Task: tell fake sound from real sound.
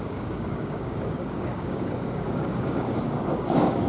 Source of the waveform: fake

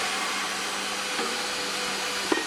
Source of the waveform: real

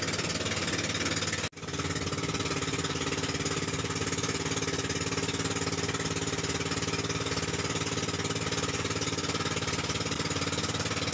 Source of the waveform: real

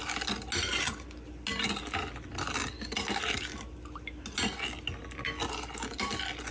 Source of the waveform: real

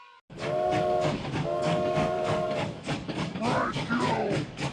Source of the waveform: fake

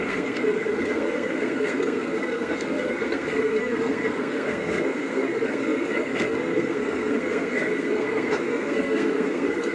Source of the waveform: fake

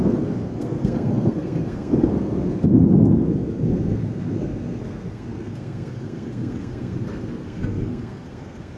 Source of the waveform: fake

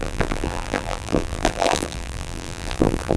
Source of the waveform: fake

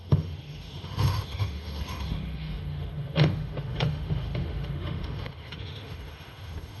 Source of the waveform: fake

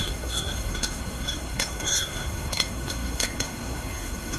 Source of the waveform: fake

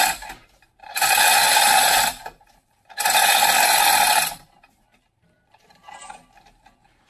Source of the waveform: fake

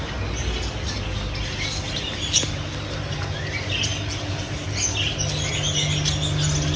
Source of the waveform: real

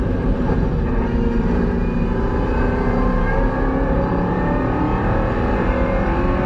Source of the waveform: fake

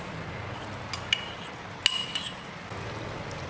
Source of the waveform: real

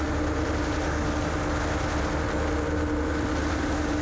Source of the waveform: real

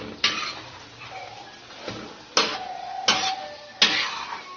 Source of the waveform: real